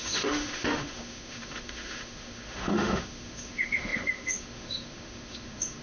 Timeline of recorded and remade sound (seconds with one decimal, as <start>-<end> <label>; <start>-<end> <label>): 0.0-5.8 remade

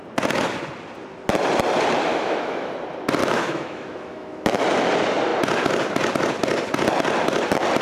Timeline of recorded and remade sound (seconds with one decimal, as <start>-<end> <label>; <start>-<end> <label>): 0.0-2.1 recorded; 2.1-2.7 remade; 2.7-3.2 recorded; 3.2-4.6 remade; 4.6-7.8 recorded